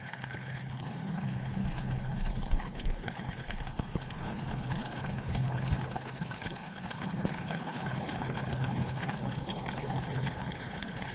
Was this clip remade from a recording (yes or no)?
yes